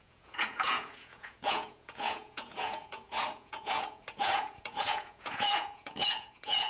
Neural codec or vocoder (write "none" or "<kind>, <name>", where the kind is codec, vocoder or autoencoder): vocoder, Vocos